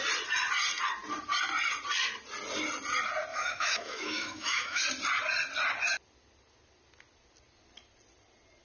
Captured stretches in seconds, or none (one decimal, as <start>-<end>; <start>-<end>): 0.0-3.3; 4.8-8.6